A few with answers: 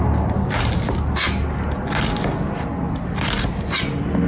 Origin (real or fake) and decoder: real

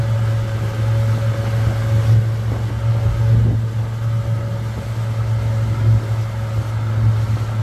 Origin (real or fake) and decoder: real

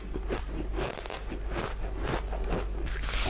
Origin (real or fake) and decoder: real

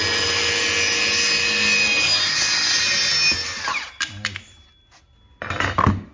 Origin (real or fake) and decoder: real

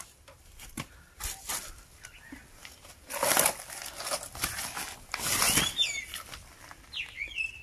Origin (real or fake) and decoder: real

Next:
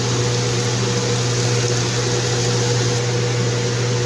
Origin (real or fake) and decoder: real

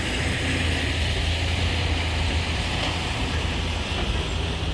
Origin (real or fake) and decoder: real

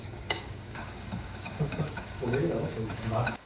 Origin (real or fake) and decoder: fake, codec, DAC